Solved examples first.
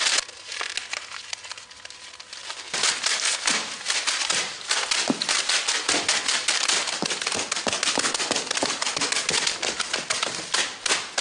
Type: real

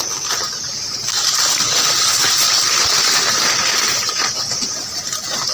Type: real